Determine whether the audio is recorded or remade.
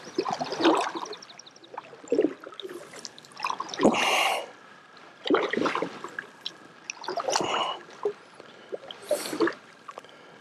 recorded